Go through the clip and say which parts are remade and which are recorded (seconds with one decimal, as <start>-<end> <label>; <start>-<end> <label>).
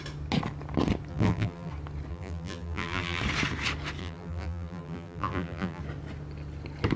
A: 0.0-1.1 recorded; 1.1-1.7 remade; 1.7-2.1 recorded; 2.1-3.2 remade; 3.2-4.0 recorded; 4.0-5.8 remade; 5.8-7.0 recorded